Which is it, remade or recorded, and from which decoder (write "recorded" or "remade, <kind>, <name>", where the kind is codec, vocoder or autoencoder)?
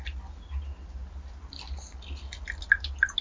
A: recorded